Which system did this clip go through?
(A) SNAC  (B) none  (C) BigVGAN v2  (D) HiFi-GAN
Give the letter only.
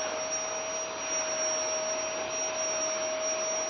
B